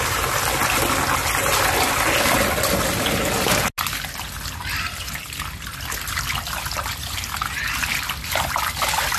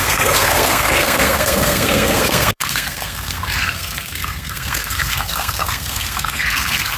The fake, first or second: second